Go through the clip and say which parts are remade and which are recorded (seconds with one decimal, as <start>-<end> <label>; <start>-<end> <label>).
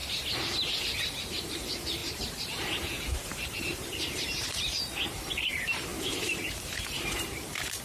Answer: 0.0-1.4 recorded; 1.4-7.8 remade